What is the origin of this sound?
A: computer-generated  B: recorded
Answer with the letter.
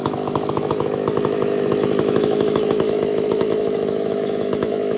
A